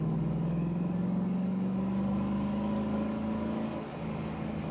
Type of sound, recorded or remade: remade